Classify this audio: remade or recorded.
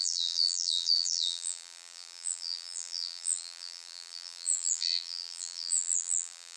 remade